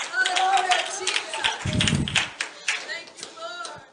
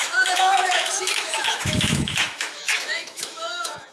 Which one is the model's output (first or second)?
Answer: second